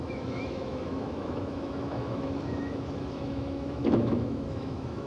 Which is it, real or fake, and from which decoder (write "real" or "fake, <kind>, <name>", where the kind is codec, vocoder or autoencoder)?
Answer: fake, autoencoder, DAC-VAE